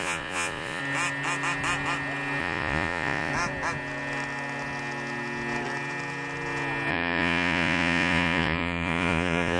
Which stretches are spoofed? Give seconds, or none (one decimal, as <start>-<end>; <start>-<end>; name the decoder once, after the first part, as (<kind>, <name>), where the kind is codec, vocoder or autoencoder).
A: 0.0-0.8 (vocoder, Vocos); 2.4-3.3; 6.9-9.6